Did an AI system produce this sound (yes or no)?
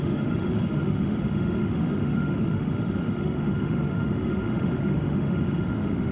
yes